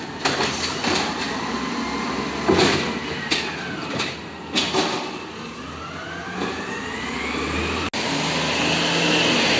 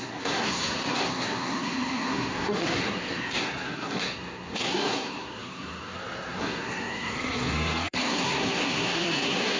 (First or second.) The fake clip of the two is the second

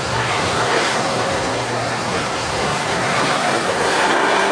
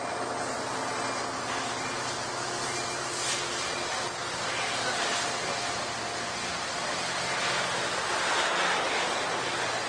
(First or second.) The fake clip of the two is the first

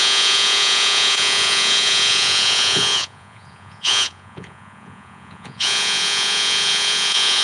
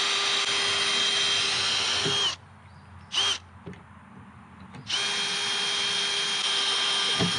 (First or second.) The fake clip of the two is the first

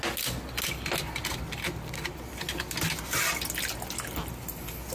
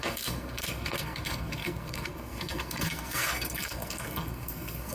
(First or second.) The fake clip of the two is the second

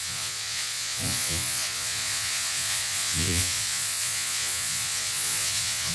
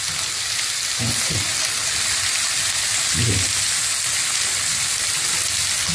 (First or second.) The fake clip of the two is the first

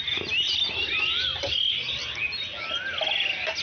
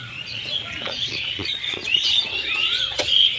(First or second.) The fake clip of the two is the second